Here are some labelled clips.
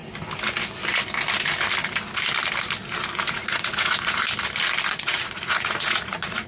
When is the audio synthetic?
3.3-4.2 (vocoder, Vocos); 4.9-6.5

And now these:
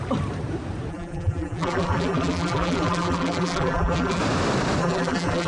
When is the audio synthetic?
0.9-4.2 (vocoder, BigVGAN v2); 4.8-5.5

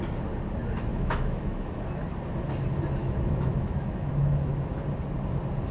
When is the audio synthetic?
0.9-1.8 (autoencoder, DAC-VAE); 3.0-4.8

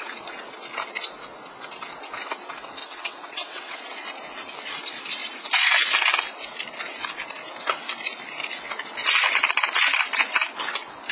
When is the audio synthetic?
2.8-3.8 (vocoder, WaveNeXt)

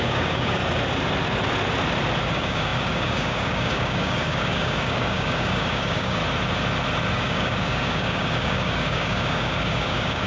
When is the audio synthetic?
0.0-0.6 (codec, DAC); 2.3-6.2; 7.1-10.3